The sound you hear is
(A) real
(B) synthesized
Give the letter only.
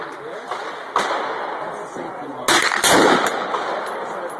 A